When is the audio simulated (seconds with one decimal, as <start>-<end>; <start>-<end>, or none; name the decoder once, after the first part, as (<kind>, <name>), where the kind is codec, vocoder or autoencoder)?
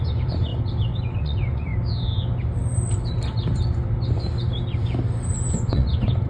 0.0-0.5 (vocoder, Vocos); 1.0-1.7; 5.5-6.3